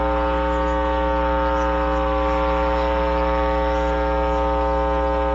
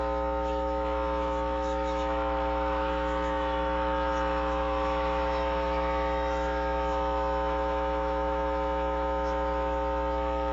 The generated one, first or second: second